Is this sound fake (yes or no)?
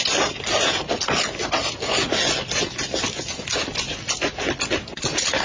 no